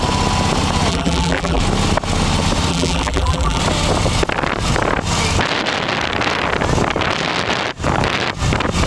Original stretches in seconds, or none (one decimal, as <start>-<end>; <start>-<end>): 0.0-0.9; 1.6-2.7; 3.6-8.9